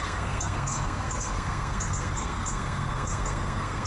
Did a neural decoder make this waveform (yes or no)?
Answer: yes